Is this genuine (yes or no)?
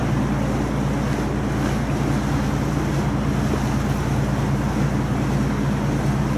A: yes